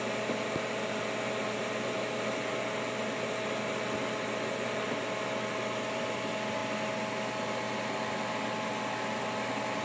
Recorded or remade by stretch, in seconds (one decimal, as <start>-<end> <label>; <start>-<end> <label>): 0.0-9.8 recorded